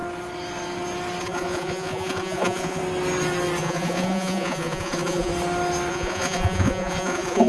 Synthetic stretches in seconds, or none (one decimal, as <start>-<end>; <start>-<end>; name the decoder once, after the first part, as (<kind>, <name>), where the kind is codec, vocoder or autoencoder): 1.2-2.8 (vocoder, Vocos); 3.6-5.3; 5.9-7.5